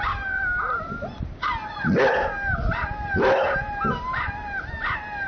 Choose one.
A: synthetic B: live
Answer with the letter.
B